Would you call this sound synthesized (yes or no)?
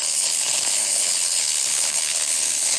yes